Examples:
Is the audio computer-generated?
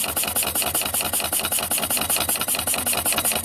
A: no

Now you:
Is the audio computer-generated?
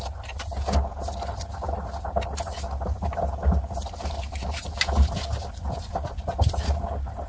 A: no